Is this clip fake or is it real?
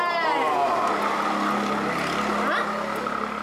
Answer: real